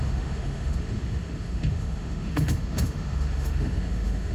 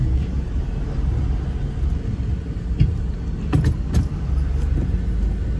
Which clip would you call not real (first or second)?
first